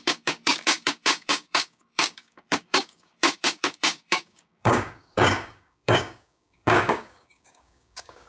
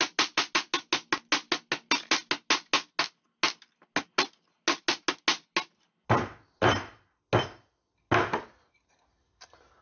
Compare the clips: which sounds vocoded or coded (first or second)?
first